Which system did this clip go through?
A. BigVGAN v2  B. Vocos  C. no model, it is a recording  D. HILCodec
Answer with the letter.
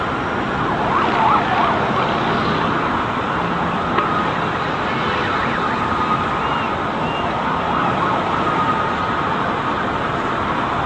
C